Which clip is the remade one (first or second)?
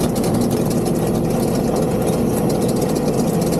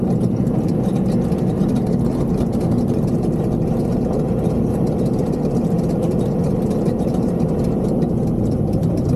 second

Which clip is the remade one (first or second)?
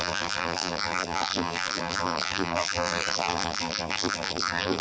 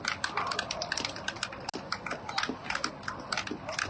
first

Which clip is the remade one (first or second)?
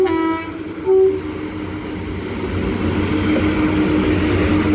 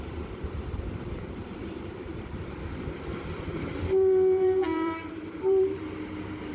second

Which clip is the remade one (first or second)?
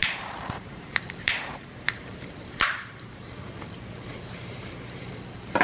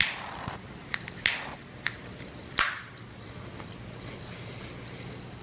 first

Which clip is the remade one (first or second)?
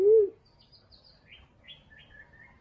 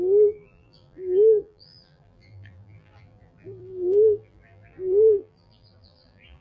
second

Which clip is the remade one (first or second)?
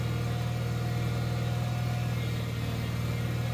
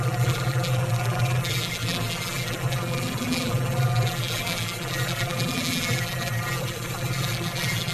second